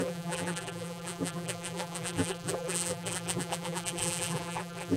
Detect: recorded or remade remade